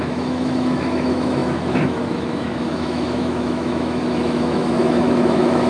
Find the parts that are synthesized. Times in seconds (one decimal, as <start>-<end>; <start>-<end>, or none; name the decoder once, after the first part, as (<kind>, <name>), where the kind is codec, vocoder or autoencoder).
0.0-5.7 (autoencoder, DAC-VAE)